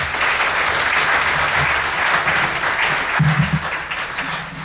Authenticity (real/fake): real